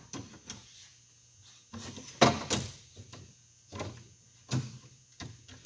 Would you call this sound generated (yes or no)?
no